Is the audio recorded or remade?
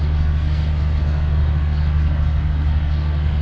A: remade